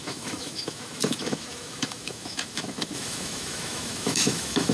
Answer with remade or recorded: remade